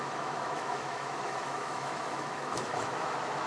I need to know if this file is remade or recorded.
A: remade